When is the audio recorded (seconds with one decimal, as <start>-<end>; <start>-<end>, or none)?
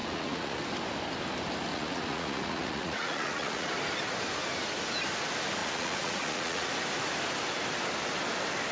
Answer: 0.6-1.7; 3.7-5.6; 6.7-8.7